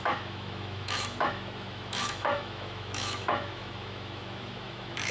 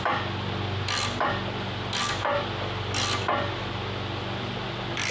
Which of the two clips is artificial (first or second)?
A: first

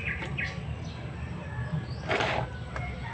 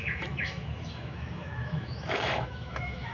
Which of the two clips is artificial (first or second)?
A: second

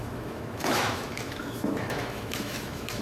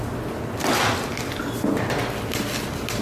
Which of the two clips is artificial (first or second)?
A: first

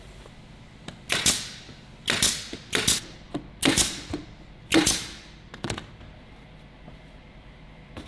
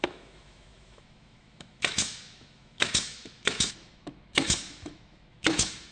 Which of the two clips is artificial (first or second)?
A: second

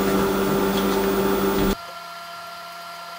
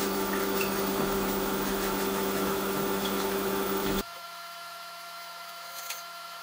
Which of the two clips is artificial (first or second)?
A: second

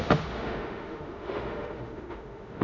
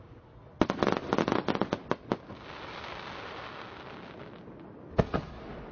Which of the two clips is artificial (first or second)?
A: first